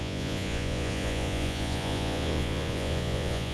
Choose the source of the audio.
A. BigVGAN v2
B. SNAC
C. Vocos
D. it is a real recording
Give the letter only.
C